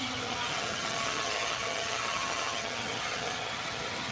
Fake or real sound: fake